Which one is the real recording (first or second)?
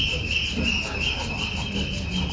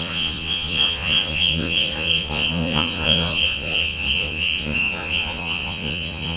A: first